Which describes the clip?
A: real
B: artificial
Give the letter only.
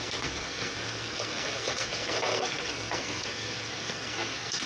B